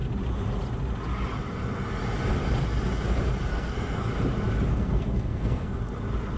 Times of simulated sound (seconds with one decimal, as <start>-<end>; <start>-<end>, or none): 3.5-4.1; 4.7-5.8

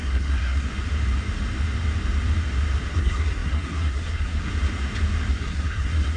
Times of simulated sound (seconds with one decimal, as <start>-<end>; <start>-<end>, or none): 0.0-0.7; 2.9-4.5; 5.3-6.2

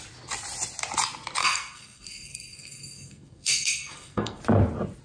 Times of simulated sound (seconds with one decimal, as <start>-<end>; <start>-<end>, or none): 1.4-4.4